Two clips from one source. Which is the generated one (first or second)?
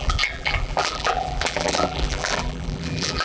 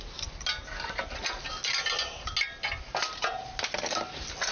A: first